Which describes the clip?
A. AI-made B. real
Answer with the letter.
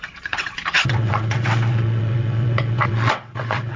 A